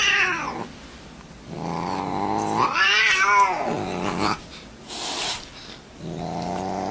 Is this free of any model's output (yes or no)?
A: yes